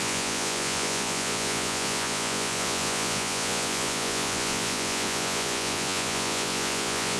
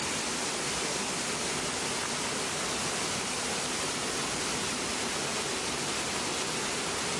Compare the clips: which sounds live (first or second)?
second